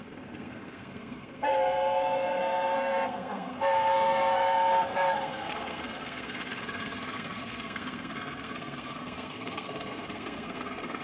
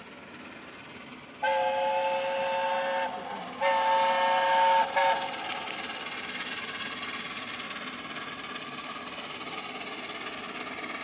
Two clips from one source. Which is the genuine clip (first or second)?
second